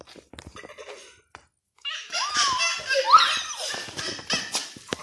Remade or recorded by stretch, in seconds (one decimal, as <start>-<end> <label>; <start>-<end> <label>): 0.0-1.6 recorded; 1.6-2.3 remade; 2.3-5.0 recorded